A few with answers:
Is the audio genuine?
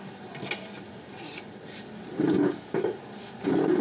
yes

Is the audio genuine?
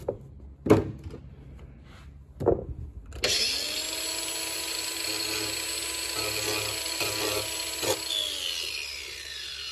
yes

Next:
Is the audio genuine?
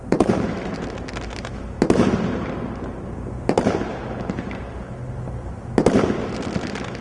yes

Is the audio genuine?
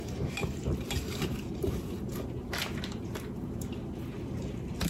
no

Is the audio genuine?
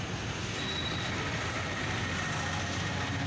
yes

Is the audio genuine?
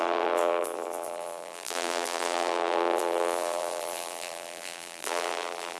no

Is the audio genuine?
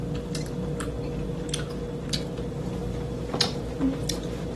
yes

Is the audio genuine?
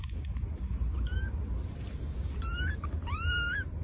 no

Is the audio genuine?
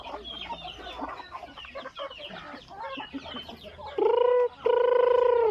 yes